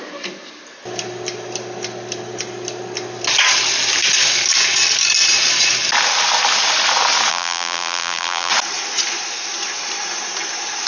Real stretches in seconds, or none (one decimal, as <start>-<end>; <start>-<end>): 0.0-7.3; 8.5-10.9